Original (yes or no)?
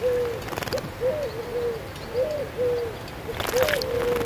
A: yes